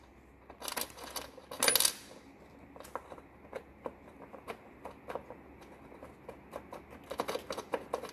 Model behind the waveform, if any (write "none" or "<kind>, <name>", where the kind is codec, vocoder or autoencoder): none